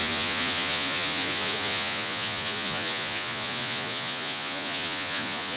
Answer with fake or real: fake